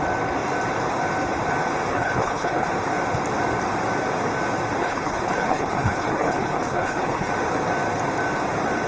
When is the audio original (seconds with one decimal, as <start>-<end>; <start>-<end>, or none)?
0.0-1.9; 2.7-4.8; 7.3-8.9